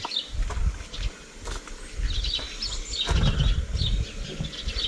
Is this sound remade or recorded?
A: recorded